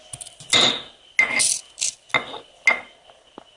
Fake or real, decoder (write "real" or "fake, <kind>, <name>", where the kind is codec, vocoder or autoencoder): real